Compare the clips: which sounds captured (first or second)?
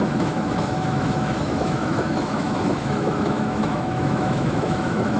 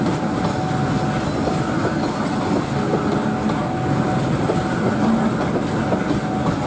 second